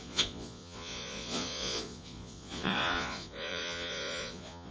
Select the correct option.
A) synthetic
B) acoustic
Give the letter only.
A